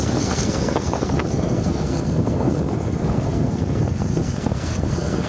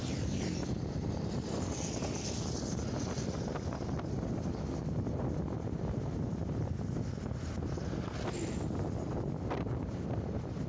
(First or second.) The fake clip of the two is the first